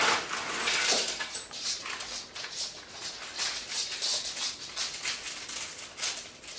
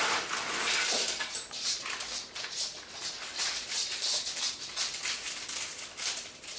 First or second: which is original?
first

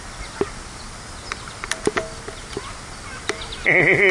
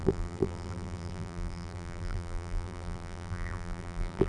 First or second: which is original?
first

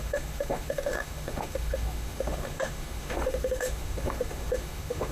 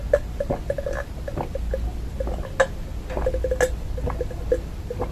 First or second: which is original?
second